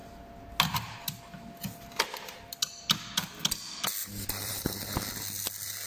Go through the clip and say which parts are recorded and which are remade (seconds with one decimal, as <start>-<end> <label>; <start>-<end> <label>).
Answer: 0.0-4.0 recorded; 4.0-5.1 remade; 5.1-5.9 recorded